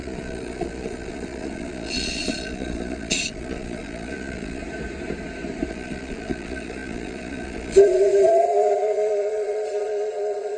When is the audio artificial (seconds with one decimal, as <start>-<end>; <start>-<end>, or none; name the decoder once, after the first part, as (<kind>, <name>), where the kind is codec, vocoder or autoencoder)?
0.0-4.6 (vocoder, Vocos); 5.7-10.6